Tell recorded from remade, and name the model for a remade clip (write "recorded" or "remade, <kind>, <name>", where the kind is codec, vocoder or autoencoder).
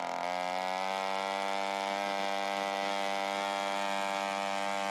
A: recorded